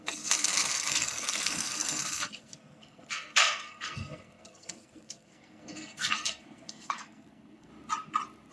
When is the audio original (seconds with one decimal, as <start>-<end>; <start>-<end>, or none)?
7.7-8.5